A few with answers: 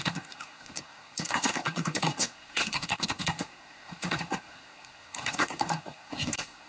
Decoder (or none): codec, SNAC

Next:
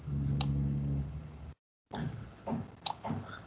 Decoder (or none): none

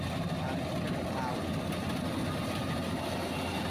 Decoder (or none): none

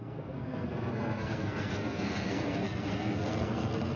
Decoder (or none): codec, SNAC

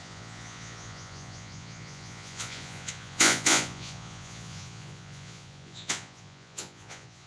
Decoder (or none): vocoder, Vocos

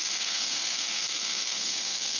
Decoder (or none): codec, SNAC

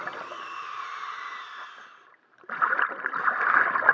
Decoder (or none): none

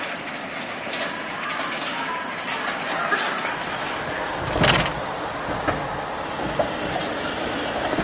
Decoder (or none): none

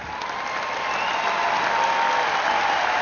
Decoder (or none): none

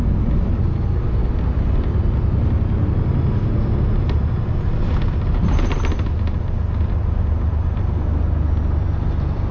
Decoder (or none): none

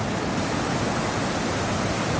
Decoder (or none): none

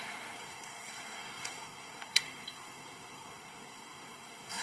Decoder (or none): codec, SNAC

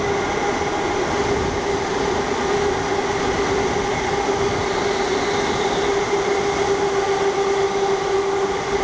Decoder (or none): none